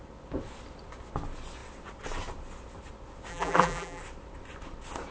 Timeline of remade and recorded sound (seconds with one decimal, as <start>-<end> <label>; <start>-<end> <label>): 0.0-3.3 recorded; 3.3-4.0 remade; 4.0-5.1 recorded